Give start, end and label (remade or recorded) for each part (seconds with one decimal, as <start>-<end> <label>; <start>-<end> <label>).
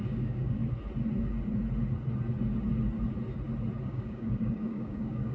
0.0-0.6 remade; 0.6-3.8 recorded; 3.8-5.3 remade